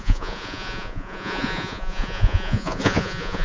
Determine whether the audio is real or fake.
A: fake